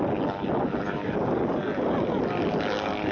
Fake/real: real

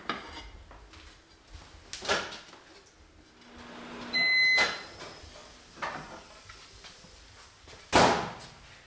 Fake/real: real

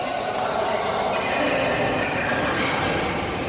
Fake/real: real